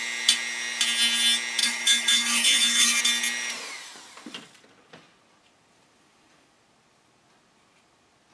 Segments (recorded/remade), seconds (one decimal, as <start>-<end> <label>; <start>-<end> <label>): 0.0-1.6 recorded; 1.6-3.0 remade; 3.0-8.3 recorded